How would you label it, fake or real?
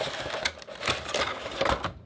real